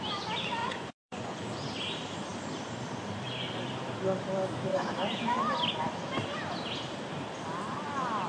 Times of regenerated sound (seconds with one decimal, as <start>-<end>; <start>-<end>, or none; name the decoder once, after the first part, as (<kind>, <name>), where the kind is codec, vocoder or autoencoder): 0.6-1.4 (vocoder, Vocos)